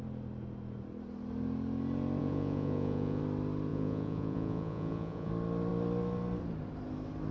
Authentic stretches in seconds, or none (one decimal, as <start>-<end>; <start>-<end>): 0.0-2.2; 3.2-3.7; 5.3-7.3